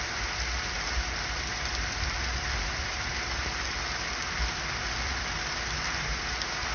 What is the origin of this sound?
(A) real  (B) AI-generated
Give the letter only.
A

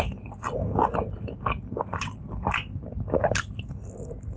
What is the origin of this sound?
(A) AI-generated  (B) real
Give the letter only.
B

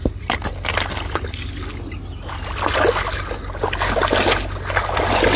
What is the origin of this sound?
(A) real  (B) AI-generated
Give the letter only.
A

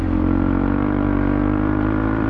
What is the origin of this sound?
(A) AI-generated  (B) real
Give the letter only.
A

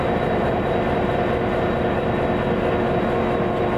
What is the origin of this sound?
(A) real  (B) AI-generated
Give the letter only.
A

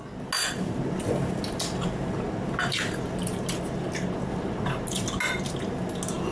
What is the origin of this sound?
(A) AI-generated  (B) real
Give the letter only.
B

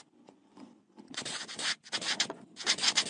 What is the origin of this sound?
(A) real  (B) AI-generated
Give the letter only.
B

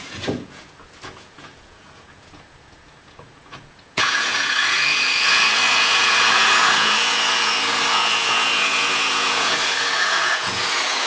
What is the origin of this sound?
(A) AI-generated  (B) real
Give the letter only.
A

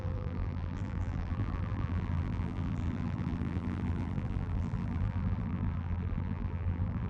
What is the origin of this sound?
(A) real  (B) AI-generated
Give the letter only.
B